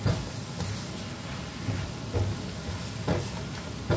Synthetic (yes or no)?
no